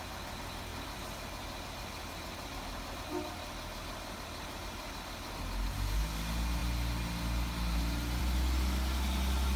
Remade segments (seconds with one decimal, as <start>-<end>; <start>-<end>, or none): none